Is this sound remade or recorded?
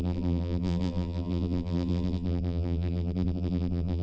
remade